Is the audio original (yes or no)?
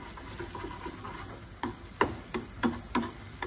yes